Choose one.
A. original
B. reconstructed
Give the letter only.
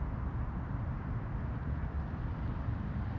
A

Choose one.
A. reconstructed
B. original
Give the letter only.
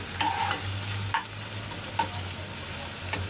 B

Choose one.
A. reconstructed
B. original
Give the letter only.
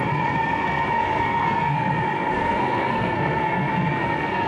A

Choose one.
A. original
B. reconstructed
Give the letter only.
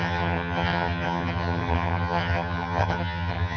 B